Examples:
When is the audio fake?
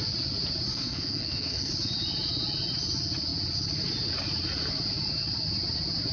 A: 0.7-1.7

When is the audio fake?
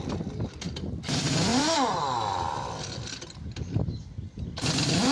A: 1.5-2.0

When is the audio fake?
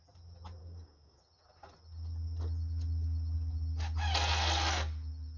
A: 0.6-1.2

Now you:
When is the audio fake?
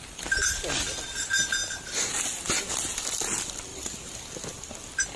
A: 3.7-4.7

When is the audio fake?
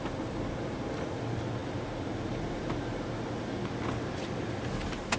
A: none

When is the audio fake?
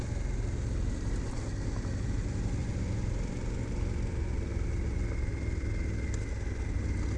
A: none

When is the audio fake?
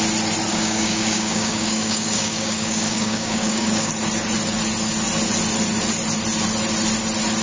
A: 0.5-3.9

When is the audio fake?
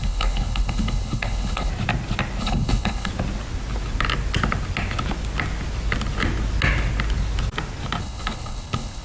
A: 0.0-1.7; 2.4-3.1; 8.0-9.0